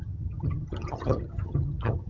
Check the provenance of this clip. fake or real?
fake